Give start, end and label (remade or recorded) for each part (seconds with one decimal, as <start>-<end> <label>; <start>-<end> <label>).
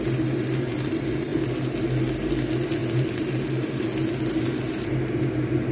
0.0-5.7 recorded